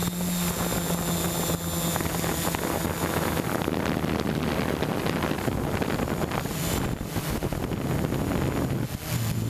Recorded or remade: recorded